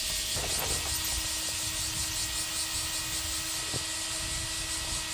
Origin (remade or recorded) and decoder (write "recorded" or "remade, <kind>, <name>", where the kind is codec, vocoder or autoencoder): recorded